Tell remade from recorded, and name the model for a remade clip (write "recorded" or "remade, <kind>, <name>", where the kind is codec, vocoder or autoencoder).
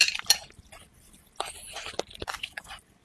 recorded